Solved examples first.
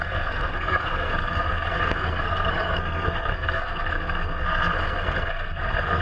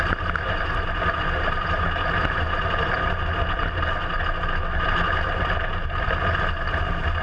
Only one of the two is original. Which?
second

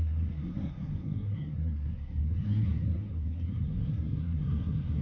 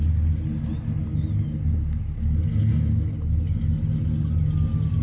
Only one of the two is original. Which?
second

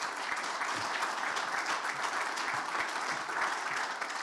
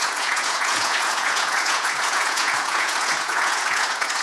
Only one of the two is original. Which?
first